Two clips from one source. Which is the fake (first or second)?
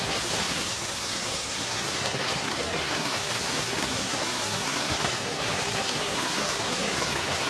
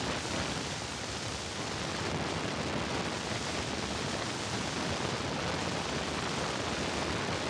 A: first